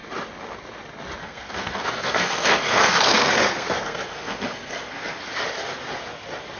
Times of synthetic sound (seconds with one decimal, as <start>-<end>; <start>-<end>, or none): 1.2-5.2